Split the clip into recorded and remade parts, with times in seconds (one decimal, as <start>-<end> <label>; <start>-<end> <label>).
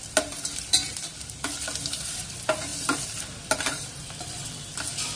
0.0-2.3 recorded; 2.3-2.7 remade; 2.7-3.4 recorded; 3.4-5.2 remade